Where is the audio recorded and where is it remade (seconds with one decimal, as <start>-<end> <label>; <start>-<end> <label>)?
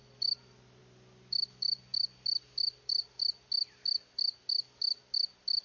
0.0-5.6 recorded